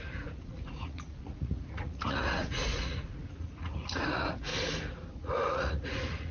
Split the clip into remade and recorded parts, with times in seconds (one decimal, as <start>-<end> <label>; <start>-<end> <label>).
0.0-4.5 remade; 4.5-5.1 recorded; 5.1-6.3 remade